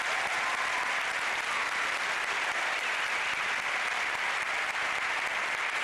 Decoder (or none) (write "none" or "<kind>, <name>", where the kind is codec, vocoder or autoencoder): none